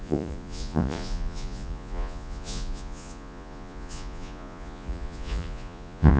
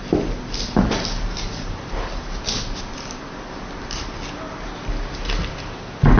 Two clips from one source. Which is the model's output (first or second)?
first